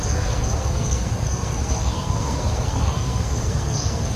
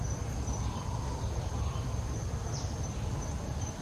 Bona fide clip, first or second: second